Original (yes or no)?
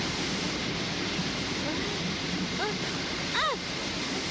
yes